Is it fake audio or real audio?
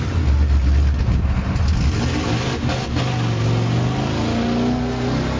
real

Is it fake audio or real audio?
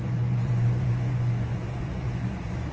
fake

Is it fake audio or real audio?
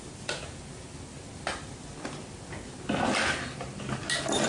real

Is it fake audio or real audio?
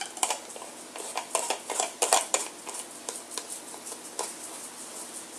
real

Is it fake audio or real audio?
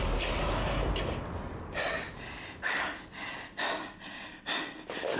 real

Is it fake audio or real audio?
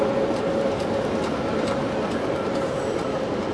real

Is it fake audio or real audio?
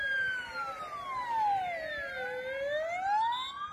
real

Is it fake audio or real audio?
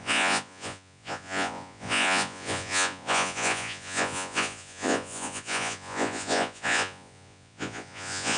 fake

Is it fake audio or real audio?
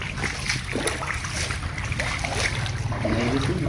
real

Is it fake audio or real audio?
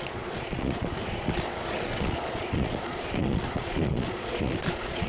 fake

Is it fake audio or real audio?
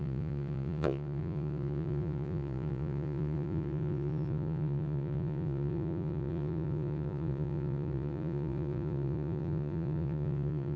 fake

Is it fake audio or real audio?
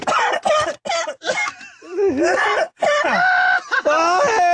real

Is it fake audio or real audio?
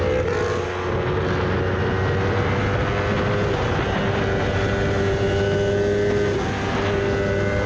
real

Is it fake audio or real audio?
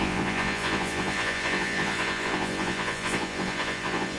fake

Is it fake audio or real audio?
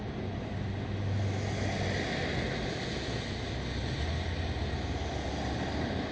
real